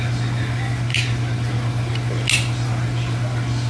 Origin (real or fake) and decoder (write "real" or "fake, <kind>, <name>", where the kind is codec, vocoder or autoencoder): real